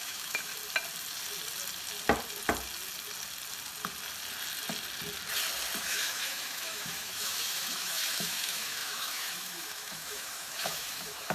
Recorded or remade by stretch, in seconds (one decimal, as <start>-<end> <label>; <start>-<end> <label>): 0.0-0.5 remade; 0.5-5.8 recorded; 5.8-11.3 remade